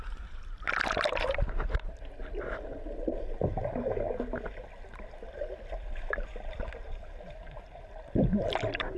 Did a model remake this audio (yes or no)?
no